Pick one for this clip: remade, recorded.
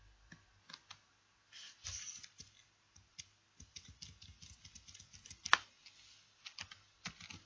recorded